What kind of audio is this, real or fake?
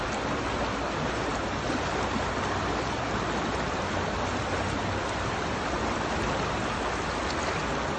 real